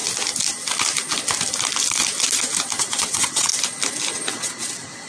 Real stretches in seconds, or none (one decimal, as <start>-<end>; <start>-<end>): 0.0-2.8; 3.5-4.3